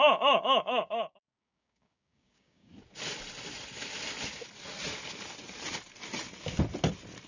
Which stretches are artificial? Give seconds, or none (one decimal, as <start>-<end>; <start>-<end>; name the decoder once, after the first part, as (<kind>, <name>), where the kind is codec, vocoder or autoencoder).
0.0-2.7 (codec, DAC)

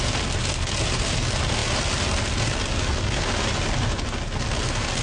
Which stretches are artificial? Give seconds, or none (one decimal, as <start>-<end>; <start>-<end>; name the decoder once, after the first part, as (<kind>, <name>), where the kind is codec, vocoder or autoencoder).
none

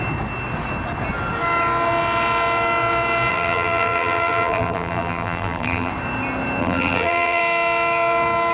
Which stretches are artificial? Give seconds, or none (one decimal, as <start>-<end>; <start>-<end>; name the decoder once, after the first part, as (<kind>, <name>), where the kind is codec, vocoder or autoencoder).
3.3-5.9 (vocoder, BigVGAN v2); 6.6-7.4

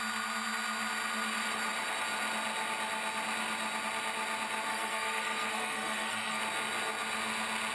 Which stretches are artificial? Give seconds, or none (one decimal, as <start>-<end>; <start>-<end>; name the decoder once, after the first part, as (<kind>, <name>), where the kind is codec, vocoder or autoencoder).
4.7-6.4 (codec, SNAC)

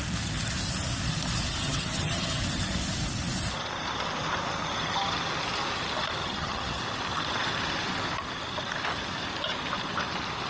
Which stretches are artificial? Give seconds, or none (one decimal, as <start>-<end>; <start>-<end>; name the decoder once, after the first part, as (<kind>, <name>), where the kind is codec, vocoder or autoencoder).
1.6-2.4 (vocoder, HiFi-GAN); 6.2-6.8